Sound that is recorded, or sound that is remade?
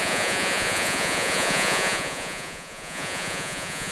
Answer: remade